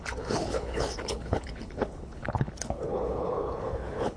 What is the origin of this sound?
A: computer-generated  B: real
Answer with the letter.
A